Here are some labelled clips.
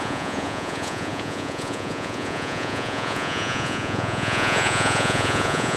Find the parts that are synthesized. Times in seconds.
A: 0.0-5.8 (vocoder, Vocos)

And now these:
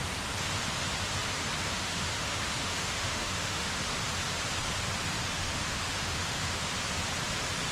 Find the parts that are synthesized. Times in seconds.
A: 1.7-3.7 (autoencoder, DAC-VAE); 5.1-6.7

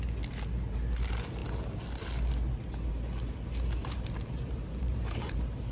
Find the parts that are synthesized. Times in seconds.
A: 3.8-5.7 (vocoder, BigVGAN v2)